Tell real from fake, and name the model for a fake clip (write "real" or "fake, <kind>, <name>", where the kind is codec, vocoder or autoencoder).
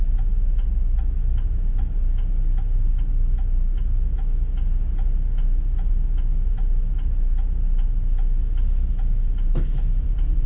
real